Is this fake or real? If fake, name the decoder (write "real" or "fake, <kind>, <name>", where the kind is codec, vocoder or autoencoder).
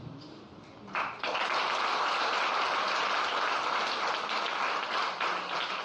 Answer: real